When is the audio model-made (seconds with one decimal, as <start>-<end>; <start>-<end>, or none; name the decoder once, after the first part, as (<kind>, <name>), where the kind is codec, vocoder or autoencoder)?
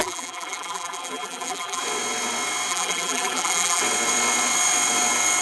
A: 0.0-1.8 (vocoder, BigVGAN v2); 2.7-3.8